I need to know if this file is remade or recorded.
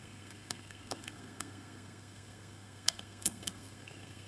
remade